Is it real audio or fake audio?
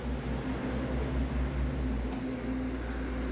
real